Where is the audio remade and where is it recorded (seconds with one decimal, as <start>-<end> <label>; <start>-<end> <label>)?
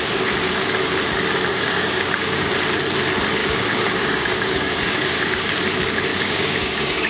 0.0-1.5 recorded; 1.5-2.5 remade; 2.5-3.4 recorded; 3.4-5.5 remade; 5.5-6.1 recorded; 6.1-7.1 remade